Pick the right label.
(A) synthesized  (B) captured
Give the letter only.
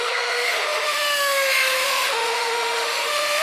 A